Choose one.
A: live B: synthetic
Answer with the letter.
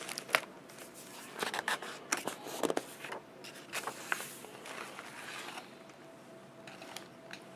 A